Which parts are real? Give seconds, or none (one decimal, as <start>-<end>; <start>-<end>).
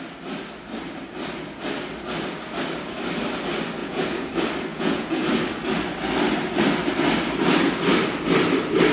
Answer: 0.0-3.8; 4.3-4.7; 5.2-8.9